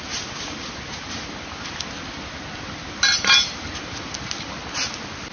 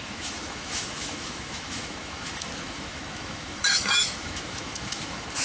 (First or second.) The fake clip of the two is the second